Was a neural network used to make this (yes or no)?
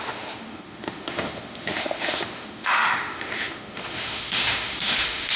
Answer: yes